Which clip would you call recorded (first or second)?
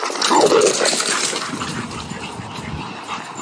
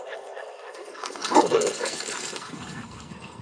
first